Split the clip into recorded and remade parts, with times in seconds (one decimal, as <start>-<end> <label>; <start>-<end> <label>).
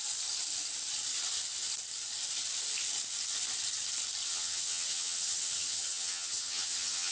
0.0-4.3 recorded; 4.3-7.1 remade